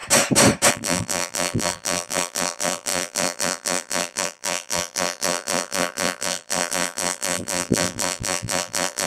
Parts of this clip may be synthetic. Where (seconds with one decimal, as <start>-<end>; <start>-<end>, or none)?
0.7-9.1